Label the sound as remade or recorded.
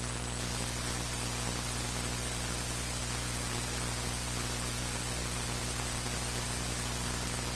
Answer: recorded